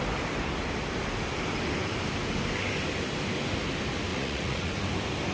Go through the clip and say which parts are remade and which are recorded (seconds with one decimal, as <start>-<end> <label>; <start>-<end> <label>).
0.0-4.1 recorded; 4.1-4.7 remade; 4.7-5.3 recorded